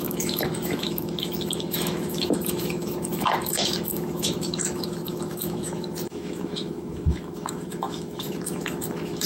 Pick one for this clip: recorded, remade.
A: remade